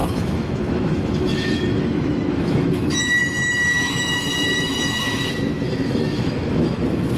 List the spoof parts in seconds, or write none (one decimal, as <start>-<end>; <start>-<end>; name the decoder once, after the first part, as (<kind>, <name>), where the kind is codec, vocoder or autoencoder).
0.0-7.2 (autoencoder, DAC-VAE)